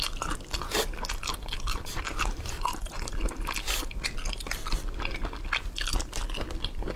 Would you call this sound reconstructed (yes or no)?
no